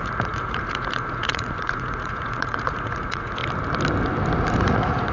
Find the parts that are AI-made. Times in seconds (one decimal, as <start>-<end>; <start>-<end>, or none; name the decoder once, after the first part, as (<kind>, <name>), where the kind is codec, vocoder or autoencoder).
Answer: 0.0-3.4 (vocoder, Vocos); 4.6-5.1